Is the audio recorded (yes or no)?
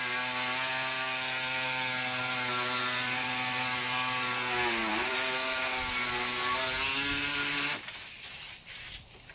yes